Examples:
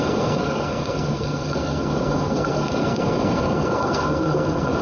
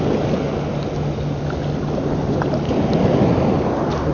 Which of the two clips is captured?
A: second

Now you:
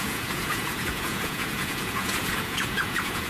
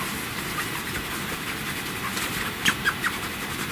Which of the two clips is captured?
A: second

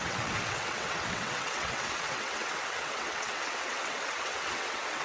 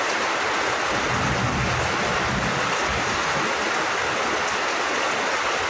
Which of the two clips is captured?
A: second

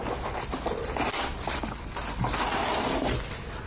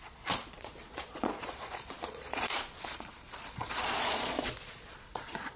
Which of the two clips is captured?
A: first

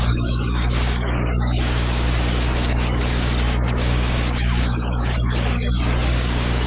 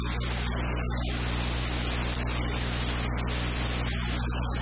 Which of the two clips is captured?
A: second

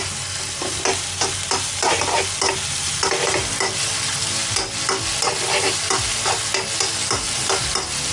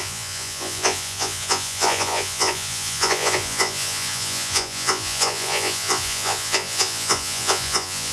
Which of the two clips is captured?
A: first